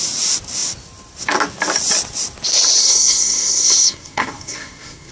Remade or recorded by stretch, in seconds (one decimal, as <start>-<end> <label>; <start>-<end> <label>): 0.0-2.8 recorded; 2.8-5.1 remade